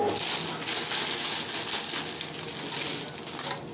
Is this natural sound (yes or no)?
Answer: yes